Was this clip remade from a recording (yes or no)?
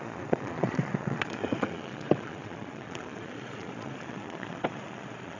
yes